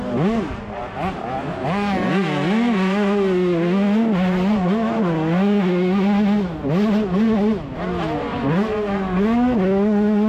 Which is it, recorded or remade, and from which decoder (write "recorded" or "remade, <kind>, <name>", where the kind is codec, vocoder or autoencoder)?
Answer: recorded